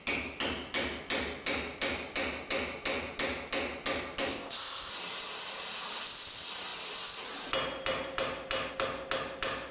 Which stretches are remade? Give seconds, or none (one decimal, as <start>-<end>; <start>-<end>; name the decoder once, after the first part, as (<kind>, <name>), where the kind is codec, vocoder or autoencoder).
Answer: 4.3-4.9 (codec, ZipCodec)